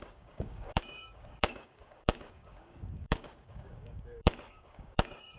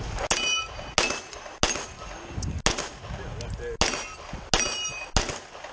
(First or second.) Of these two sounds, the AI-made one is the first